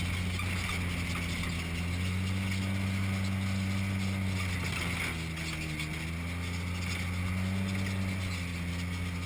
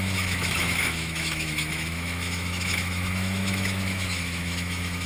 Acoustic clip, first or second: first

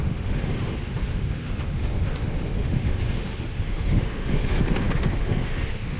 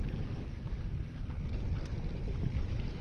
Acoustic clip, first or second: second